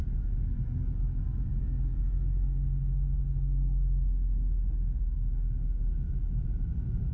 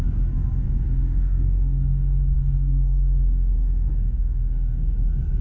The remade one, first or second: second